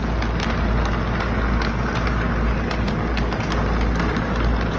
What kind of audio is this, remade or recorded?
recorded